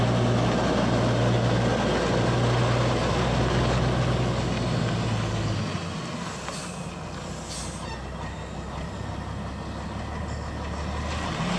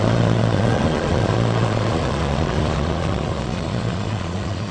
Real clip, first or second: first